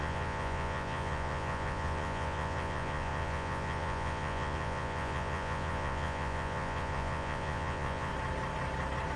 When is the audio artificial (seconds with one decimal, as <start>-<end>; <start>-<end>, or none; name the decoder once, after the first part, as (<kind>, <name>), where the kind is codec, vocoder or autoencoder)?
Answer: 0.0-8.1 (vocoder, Vocos)